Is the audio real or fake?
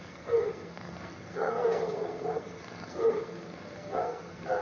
fake